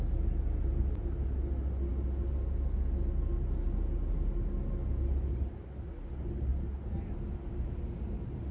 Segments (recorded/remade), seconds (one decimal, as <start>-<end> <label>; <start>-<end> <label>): 0.0-8.5 recorded